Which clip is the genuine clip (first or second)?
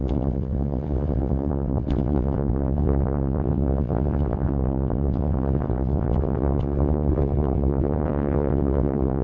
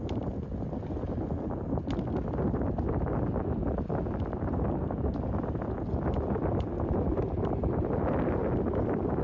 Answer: second